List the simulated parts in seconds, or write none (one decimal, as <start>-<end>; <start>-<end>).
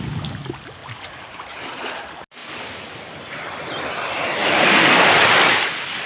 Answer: 0.8-2.0; 4.4-5.1